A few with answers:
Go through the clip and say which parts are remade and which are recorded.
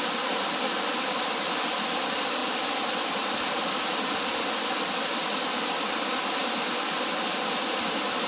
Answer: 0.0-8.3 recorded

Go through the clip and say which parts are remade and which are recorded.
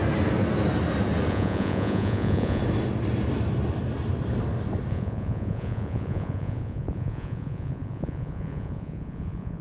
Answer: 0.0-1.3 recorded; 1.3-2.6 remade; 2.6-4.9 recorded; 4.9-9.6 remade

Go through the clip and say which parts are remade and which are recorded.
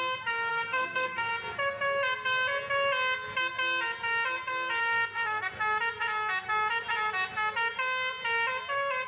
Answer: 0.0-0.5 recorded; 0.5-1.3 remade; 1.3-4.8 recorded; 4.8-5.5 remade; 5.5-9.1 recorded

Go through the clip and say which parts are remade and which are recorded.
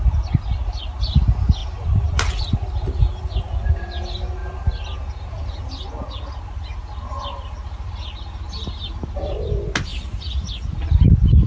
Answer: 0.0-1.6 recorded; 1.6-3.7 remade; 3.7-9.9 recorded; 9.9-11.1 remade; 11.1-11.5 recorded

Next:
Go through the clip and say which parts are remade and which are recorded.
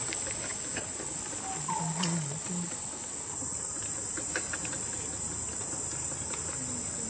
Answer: 0.0-7.1 recorded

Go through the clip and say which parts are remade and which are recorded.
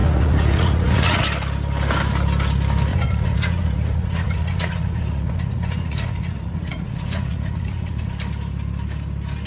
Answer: 0.0-1.2 remade; 1.2-2.9 recorded; 2.9-8.1 remade; 8.1-9.5 recorded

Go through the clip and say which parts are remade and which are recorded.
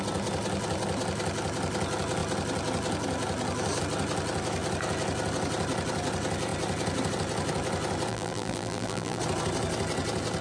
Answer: 0.0-8.1 recorded; 8.1-9.2 remade; 9.2-10.4 recorded